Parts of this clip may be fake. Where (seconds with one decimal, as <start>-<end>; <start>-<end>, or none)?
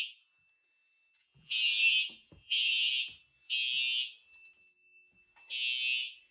1.2-2.9